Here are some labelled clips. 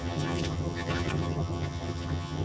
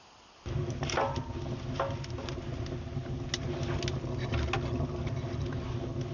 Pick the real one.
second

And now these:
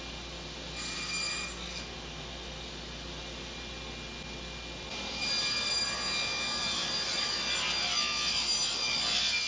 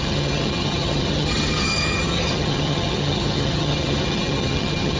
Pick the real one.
first